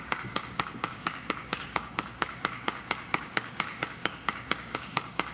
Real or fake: fake